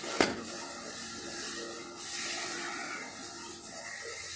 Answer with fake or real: real